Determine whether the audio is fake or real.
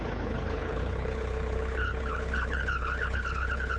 fake